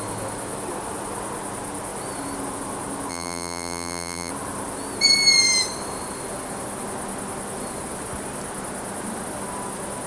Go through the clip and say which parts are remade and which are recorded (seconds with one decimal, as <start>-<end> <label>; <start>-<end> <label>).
0.0-3.1 recorded; 3.1-4.3 remade; 4.3-10.1 recorded